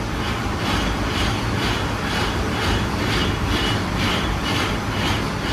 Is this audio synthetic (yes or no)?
yes